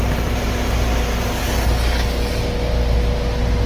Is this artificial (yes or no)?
no